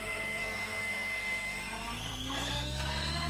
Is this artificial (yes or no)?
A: yes